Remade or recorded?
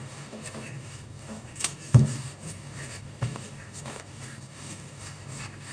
remade